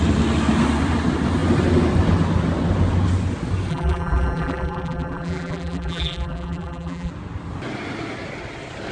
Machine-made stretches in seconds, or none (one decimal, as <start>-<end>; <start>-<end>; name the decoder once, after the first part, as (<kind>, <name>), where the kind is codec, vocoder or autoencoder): 3.7-7.1 (vocoder, BigVGAN v2)